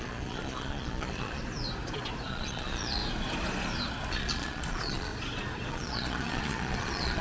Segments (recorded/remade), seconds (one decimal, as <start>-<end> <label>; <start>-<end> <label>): 0.0-1.4 remade; 1.4-2.3 recorded; 2.3-3.0 remade; 3.0-4.1 recorded; 4.1-5.1 remade; 5.1-5.7 recorded; 5.7-7.2 remade

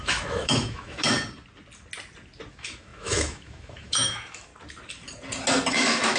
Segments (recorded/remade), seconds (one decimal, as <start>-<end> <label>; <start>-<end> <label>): 0.0-1.1 remade; 1.1-2.5 recorded; 2.5-4.5 remade; 4.5-5.7 recorded; 5.7-6.2 remade

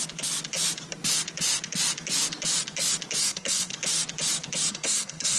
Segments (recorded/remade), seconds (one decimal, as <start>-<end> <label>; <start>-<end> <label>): 0.0-3.2 recorded; 3.2-3.7 remade; 3.7-4.7 recorded; 4.7-5.4 remade